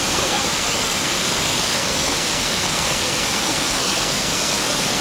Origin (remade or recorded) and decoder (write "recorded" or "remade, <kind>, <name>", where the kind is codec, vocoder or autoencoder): remade, codec, SNAC